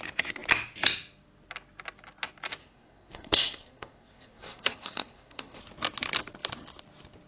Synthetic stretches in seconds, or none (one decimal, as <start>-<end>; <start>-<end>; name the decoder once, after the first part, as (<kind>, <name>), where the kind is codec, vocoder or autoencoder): 2.6-5.6 (codec, SNAC)

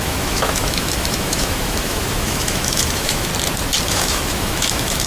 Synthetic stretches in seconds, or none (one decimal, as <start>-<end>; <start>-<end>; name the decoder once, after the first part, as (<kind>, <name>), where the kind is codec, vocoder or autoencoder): 0.0-3.3 (autoencoder, DAC-VAE); 3.8-5.1